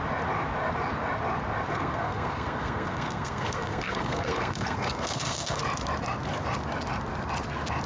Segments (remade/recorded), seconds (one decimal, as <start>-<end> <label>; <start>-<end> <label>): 0.0-1.7 recorded; 1.7-5.6 remade; 5.6-7.9 recorded